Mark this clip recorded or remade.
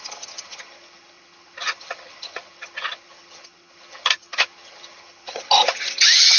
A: remade